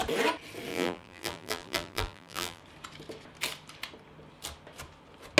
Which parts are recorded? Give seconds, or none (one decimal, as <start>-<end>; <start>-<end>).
0.0-0.7; 2.6-5.4